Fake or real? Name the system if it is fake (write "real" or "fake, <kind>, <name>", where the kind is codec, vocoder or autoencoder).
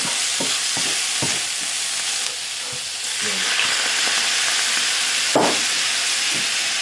real